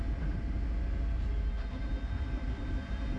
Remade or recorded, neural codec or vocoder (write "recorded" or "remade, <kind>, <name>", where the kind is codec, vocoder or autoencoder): recorded